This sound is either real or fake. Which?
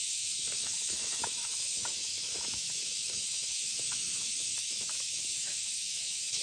fake